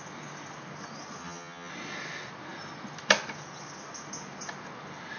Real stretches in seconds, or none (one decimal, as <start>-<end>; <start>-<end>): 0.0-1.2; 1.7-5.2